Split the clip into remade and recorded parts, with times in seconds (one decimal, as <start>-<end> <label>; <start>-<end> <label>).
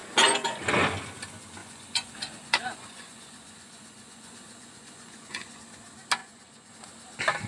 0.0-0.6 remade; 0.6-1.6 recorded; 1.6-5.6 remade; 5.6-6.2 recorded; 6.2-6.7 remade; 6.7-7.5 recorded